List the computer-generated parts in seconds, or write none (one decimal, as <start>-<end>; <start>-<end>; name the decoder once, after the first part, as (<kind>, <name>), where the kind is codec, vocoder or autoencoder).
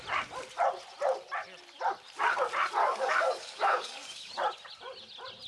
2.8-4.3 (codec, DAC)